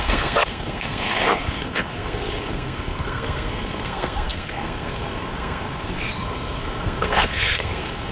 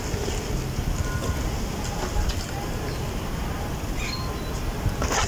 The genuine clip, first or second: second